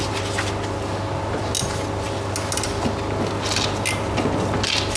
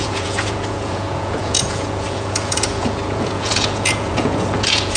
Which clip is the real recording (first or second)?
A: first